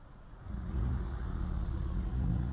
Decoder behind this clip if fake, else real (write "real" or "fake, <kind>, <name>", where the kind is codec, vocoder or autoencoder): fake, vocoder, Vocos